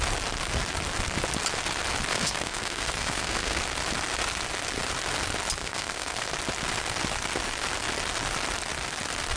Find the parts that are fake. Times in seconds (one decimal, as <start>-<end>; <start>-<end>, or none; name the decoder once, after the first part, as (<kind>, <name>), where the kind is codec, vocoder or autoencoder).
2.1-3.6 (codec, SNAC); 5.6-6.3

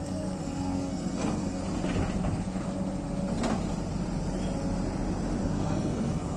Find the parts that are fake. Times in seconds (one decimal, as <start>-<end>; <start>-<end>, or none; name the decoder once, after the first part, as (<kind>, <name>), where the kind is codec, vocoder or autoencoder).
0.0-1.6 (codec, SNAC); 5.4-6.4

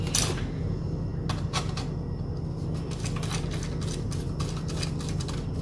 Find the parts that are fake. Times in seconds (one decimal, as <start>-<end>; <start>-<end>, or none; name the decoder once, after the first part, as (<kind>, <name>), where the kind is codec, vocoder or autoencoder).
none

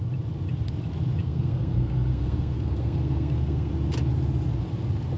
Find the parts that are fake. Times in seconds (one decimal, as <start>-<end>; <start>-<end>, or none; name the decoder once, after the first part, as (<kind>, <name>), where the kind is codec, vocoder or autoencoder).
1.2-3.7 (codec, SNAC)

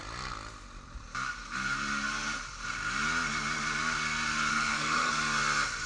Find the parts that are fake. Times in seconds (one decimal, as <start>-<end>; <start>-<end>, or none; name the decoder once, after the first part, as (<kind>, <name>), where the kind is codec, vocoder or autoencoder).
4.5-5.1 (codec, SNAC)